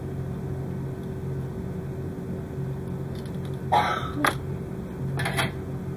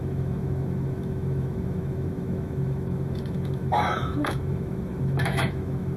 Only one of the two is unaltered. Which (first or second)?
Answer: first